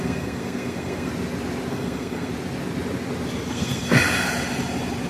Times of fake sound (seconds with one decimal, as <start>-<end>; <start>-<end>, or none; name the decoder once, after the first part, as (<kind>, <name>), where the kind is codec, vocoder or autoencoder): 0.0-1.1 (codec, SNAC); 1.7-2.3; 3.5-4.0